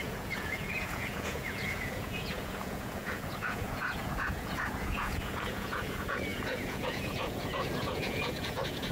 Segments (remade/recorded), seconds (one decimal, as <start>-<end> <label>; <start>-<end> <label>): 0.0-8.9 remade